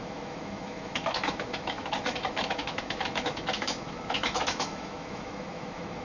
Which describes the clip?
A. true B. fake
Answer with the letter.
B